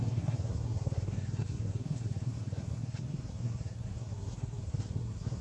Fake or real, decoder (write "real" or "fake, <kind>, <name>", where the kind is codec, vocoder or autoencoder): fake, codec, SNAC